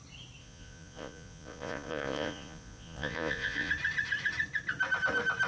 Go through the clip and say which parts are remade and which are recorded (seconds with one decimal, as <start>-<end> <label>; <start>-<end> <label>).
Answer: 0.0-0.4 recorded; 0.4-3.7 remade; 3.7-5.5 recorded